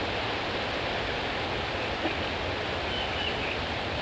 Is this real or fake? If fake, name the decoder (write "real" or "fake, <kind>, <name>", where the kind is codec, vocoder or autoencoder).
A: real